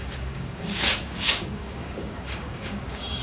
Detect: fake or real fake